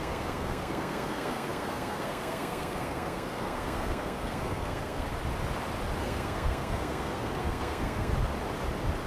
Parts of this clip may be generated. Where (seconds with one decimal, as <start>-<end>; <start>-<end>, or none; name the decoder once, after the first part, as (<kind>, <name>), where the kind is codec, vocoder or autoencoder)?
0.0-5.1 (codec, SNAC); 6.0-8.1